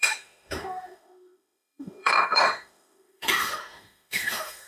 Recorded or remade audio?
remade